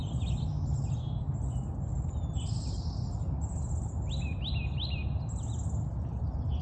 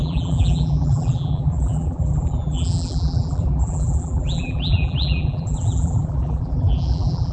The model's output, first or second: second